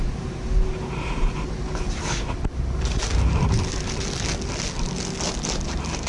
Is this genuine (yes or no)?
yes